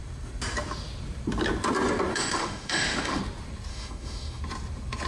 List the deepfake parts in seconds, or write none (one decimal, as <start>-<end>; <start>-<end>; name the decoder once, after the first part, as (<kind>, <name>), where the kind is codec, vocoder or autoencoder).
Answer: 2.1-3.2 (autoencoder, DAC-VAE); 3.7-4.4